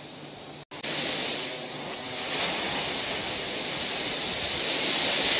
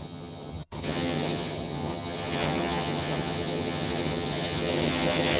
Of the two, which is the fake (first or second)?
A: second